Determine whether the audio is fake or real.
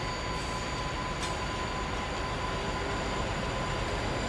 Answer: real